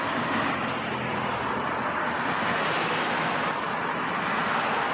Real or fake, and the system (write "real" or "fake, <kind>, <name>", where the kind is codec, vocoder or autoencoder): real